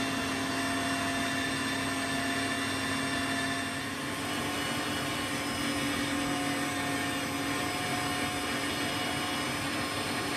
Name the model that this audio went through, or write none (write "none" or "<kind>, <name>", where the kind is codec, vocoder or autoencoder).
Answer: none